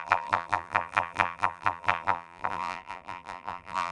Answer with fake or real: fake